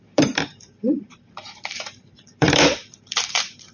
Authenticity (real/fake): fake